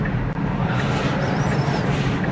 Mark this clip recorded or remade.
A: recorded